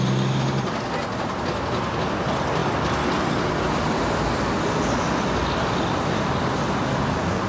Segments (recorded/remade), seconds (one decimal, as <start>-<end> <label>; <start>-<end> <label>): 0.0-7.5 recorded